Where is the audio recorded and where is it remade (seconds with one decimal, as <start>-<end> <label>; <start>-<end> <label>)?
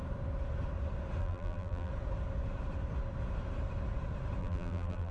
0.0-1.2 recorded; 1.2-1.9 remade; 1.9-4.4 recorded; 4.4-5.1 remade